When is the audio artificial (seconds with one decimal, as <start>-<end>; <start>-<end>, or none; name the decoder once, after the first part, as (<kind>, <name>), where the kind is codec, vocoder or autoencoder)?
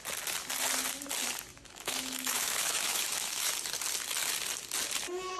1.5-3.5 (autoencoder, DAC-VAE)